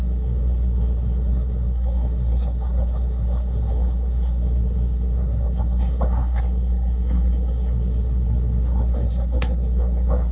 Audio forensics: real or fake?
fake